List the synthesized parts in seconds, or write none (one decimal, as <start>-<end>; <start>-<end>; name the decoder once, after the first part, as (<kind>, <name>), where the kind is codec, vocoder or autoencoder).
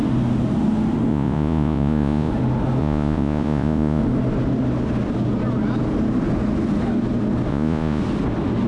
1.1-2.3 (vocoder, Vocos); 2.8-4.0; 7.5-8.0